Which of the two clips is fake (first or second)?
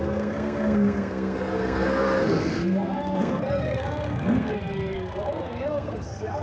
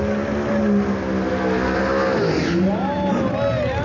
first